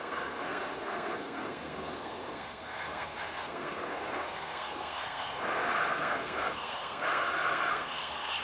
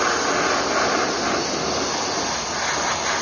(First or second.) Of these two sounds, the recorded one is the second